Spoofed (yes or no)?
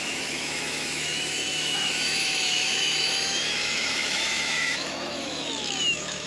yes